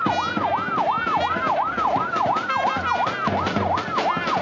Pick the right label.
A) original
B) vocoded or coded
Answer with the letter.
A